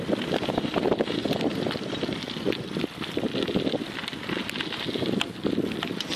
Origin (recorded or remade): recorded